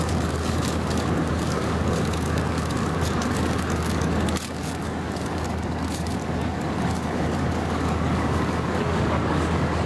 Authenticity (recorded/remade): remade